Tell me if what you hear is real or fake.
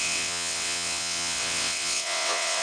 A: fake